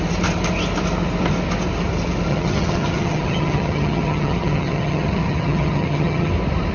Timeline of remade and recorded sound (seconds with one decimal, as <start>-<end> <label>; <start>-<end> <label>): 0.0-2.3 recorded; 2.3-6.3 remade; 6.3-6.7 recorded